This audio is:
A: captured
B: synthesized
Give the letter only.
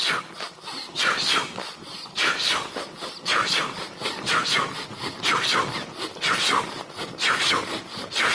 A